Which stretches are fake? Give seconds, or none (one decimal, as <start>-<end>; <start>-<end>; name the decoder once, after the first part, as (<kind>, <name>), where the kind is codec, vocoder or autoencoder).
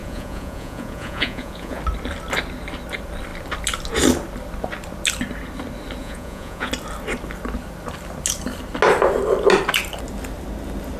0.0-1.8 (vocoder, Vocos); 6.0-6.7